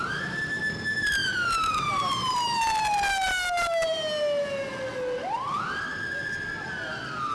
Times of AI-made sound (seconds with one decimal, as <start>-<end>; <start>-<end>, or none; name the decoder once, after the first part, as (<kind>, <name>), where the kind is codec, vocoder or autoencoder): none